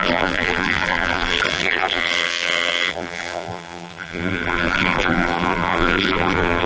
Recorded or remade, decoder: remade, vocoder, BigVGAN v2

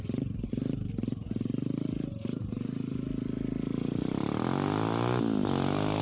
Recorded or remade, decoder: recorded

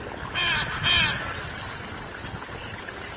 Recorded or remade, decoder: recorded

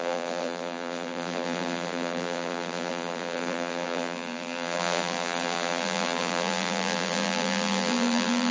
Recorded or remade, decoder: remade, vocoder, BigVGAN v2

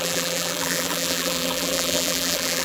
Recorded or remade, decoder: remade, vocoder, BigVGAN v2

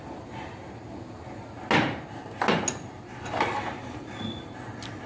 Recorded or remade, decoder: recorded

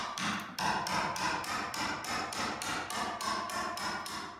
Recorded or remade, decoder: recorded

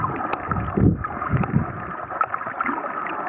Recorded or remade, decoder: recorded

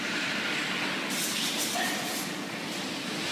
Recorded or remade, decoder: recorded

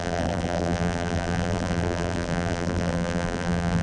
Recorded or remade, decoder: remade, vocoder, BigVGAN v2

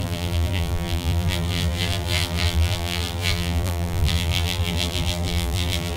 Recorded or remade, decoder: remade, vocoder, BigVGAN v2